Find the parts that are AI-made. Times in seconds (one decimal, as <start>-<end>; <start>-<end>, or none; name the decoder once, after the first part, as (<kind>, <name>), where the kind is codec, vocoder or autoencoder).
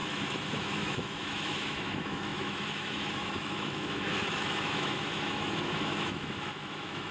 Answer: 0.0-7.1 (autoencoder, DAC-VAE)